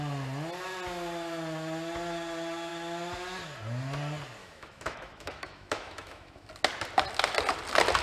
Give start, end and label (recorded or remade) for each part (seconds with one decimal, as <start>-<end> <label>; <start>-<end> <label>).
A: 0.0-4.4 recorded; 4.4-6.5 remade; 6.5-8.0 recorded